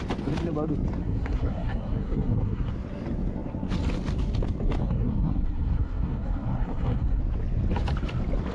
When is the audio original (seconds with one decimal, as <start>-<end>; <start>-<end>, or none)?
0.0-1.0; 2.7-4.8; 7.2-8.5